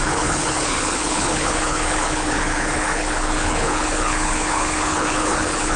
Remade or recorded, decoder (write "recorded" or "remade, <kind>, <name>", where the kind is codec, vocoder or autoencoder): remade, codec, HILCodec